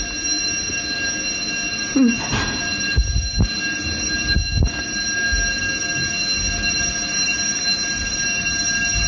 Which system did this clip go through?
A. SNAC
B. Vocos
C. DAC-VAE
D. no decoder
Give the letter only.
D